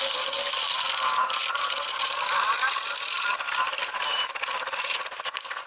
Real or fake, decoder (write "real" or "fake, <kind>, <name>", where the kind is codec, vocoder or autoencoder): fake, vocoder, BigVGAN v2